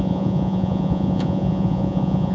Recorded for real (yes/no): no